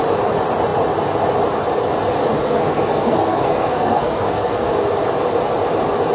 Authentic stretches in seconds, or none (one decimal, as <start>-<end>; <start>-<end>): 0.0-2.4; 4.7-6.1